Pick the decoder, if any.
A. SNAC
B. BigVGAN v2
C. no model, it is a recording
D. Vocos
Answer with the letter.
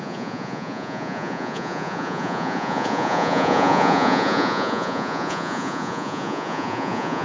D